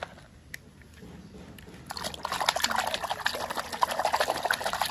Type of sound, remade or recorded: recorded